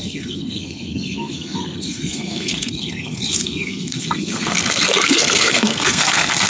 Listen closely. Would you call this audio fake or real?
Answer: fake